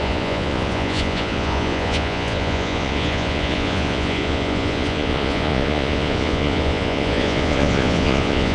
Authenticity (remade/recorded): remade